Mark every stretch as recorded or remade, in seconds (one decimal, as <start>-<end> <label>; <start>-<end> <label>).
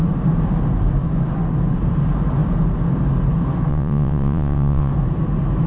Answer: 0.0-3.7 recorded; 3.7-4.9 remade; 4.9-5.7 recorded